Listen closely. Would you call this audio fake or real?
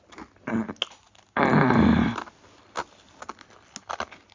real